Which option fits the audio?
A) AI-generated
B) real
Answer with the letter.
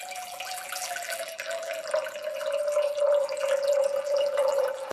A